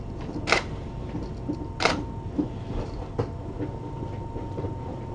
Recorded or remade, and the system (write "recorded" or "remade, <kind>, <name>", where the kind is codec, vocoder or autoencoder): recorded